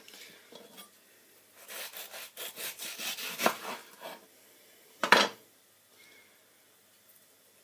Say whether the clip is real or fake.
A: fake